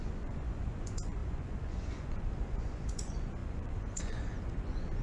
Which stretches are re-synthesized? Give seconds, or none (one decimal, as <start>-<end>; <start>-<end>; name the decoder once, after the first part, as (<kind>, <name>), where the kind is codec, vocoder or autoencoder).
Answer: 0.0-5.0 (vocoder, Vocos)